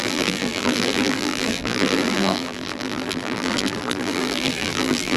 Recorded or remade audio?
remade